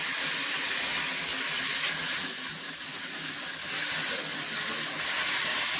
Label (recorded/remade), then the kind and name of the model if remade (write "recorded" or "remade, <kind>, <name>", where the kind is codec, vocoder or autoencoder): recorded